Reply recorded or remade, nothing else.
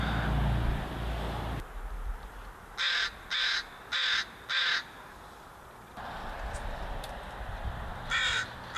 recorded